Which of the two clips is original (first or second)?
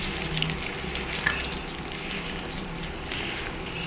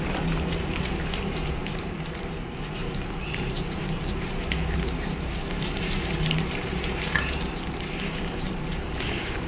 first